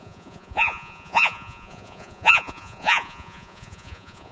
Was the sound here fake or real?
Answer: fake